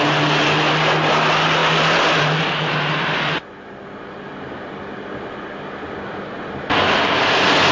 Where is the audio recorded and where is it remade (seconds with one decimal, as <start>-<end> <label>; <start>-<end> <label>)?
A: 0.0-7.7 recorded